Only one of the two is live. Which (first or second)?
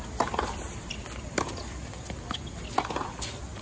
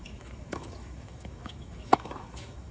first